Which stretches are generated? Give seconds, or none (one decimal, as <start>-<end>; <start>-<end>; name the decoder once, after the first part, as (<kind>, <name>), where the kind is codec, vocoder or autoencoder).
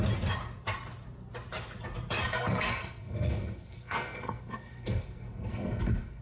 2.2-6.2 (codec, SNAC)